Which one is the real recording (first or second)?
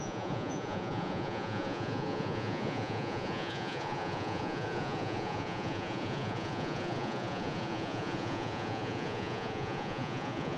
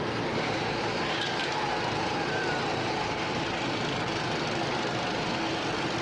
second